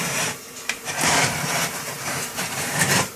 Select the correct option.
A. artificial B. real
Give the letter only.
A